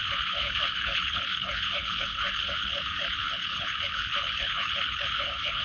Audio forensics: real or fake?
fake